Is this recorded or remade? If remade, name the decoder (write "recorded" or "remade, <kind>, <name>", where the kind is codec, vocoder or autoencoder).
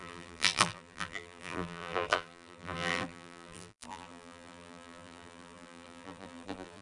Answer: remade, vocoder, BigVGAN v2